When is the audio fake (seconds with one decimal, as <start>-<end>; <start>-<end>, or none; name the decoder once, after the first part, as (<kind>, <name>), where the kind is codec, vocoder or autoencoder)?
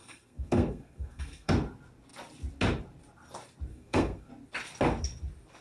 0.0-1.5 (codec, SNAC); 3.7-4.3